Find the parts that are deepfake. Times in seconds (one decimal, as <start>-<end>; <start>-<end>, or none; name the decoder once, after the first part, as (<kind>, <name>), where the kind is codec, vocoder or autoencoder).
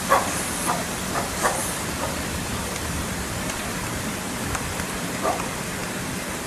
0.0-6.5 (vocoder, BigVGAN v2)